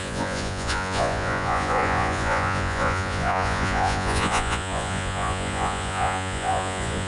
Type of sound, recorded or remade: remade